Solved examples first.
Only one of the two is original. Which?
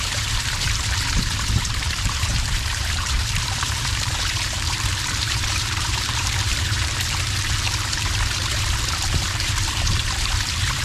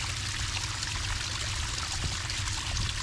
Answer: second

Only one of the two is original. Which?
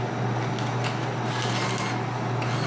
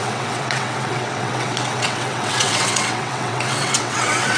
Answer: first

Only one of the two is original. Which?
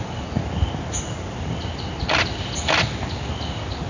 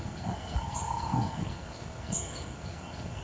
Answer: first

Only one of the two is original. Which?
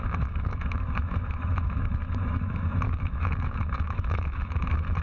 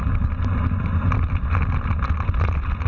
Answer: second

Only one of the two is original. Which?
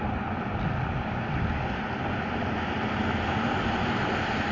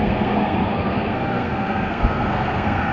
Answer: first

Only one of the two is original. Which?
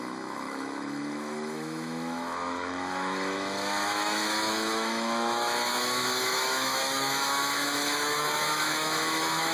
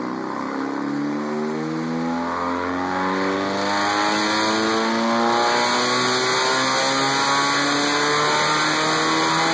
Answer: second